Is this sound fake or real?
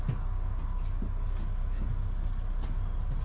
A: real